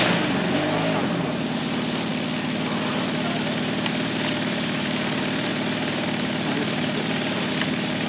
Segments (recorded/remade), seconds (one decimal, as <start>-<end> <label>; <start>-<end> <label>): 0.0-2.1 remade; 2.1-2.9 recorded; 2.9-8.1 remade